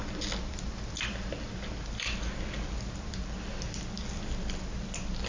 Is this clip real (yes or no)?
yes